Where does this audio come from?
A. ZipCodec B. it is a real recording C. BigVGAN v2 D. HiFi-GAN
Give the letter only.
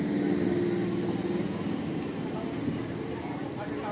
B